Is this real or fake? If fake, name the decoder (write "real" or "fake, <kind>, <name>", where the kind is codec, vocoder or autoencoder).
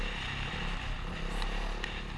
real